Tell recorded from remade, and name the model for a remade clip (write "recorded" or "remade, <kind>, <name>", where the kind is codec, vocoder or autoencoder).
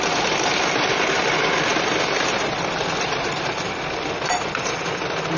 recorded